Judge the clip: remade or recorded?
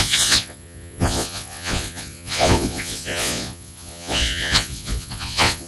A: remade